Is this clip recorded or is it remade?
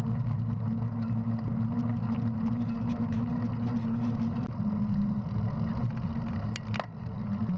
recorded